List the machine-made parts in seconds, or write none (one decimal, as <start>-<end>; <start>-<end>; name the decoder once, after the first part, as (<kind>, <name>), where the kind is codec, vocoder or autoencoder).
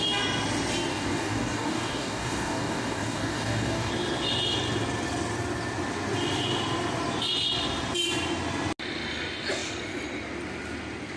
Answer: 0.9-3.9 (codec, DAC)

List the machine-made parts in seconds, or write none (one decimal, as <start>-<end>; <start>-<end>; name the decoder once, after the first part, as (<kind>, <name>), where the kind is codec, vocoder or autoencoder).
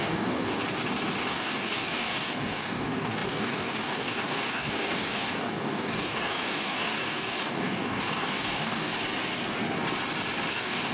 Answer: 0.0-0.6 (codec, DAC); 1.3-8.9; 10.5-10.9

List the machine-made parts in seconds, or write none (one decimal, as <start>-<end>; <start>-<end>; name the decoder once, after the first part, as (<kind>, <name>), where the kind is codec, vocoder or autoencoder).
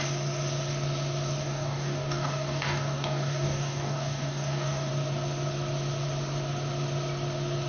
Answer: 1.4-4.9 (codec, DAC)